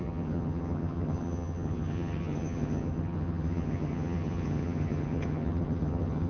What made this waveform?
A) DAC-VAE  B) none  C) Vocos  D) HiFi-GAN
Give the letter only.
D